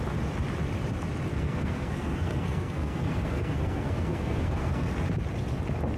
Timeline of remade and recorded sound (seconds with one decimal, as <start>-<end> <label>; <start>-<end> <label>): 0.0-1.3 recorded; 1.3-4.9 remade; 4.9-6.0 recorded

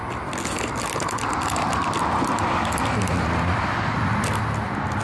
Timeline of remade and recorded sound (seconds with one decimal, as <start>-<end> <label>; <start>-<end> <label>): 0.0-5.0 recorded

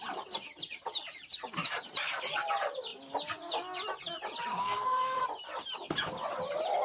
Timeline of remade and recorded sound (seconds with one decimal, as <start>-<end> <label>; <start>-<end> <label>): 0.0-4.5 recorded; 4.5-5.2 remade; 5.2-6.8 recorded

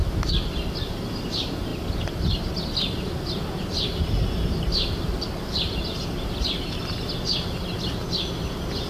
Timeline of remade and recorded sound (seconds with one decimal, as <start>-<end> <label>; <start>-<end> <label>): 0.0-8.9 recorded

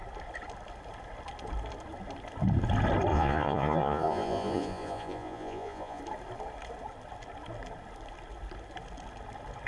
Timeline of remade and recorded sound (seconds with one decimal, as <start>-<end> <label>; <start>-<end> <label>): 0.0-3.1 recorded; 3.1-6.0 remade; 6.0-9.7 recorded

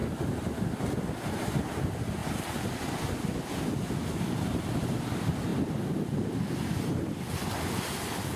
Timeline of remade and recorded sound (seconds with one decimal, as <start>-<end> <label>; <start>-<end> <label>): 0.0-0.8 remade; 0.8-2.2 recorded; 2.2-2.7 remade; 2.7-8.4 recorded

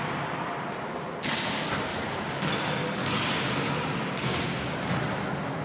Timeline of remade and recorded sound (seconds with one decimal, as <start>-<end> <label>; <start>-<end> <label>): 0.0-1.9 recorded; 1.9-2.4 remade; 2.4-3.0 recorded; 3.0-4.9 remade; 4.9-5.6 recorded